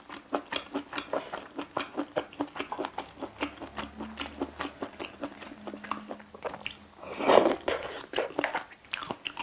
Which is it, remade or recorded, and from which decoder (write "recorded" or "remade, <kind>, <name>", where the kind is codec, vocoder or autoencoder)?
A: recorded